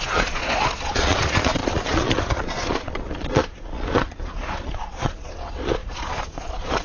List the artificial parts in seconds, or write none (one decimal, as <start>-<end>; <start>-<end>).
0.0-6.8